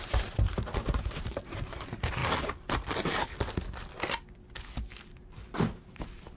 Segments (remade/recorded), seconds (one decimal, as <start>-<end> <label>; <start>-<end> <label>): 0.0-2.2 remade; 2.2-6.0 recorded; 6.0-6.4 remade